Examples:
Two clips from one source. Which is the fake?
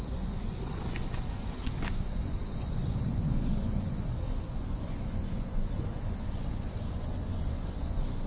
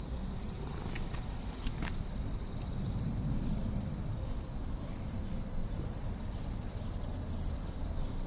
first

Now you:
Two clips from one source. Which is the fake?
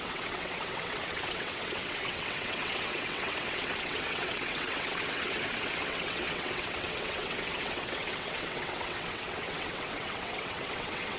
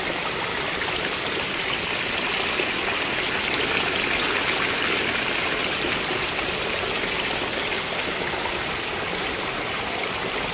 first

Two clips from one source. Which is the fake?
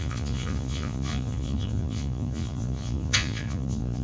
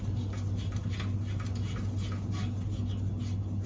first